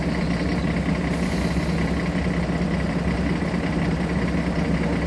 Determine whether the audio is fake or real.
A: real